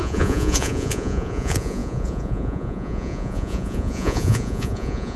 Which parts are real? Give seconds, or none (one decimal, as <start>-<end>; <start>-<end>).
none